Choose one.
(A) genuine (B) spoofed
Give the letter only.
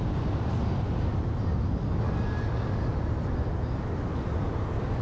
A